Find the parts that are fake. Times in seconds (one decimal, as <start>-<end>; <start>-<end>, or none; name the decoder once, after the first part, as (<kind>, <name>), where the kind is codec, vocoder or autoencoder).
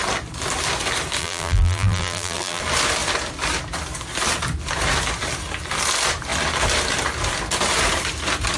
1.2-2.6 (vocoder, BigVGAN v2)